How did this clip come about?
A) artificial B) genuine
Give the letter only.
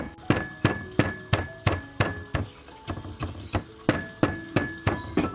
B